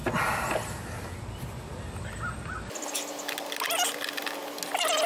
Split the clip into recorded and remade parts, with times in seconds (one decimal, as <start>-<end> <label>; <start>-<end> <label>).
0.0-5.1 recorded